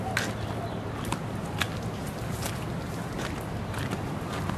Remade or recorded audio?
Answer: recorded